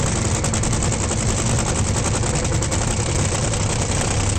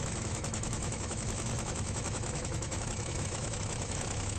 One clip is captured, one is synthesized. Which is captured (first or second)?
first